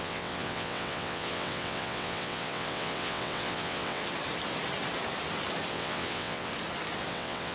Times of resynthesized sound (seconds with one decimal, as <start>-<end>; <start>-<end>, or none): 0.0-4.0; 5.7-6.5; 7.1-7.5